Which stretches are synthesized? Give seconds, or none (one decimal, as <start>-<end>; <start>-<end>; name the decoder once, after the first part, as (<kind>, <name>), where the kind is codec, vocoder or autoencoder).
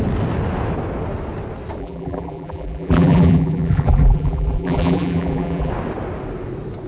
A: 1.8-5.7 (vocoder, BigVGAN v2)